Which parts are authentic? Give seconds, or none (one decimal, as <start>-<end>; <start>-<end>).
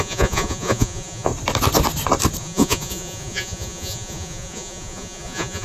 1.3-2.4